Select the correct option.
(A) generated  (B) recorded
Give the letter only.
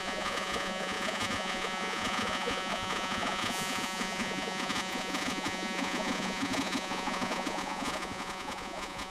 A